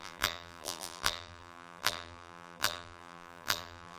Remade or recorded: remade